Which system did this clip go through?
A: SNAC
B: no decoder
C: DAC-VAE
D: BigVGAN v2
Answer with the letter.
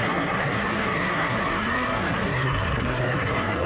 A